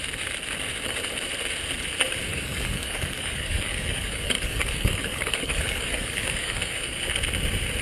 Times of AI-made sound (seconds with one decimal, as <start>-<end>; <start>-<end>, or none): 2.3-7.0